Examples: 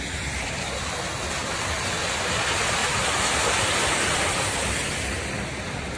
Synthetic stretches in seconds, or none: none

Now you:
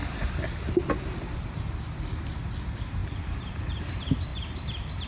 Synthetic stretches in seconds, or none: 0.9-5.1 (vocoder, BigVGAN v2)

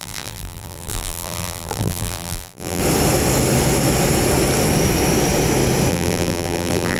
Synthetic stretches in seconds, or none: 0.0-2.8 (vocoder, BigVGAN v2); 5.9-7.0

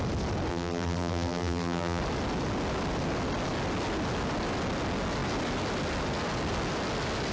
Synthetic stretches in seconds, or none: 0.5-2.0 (vocoder, BigVGAN v2)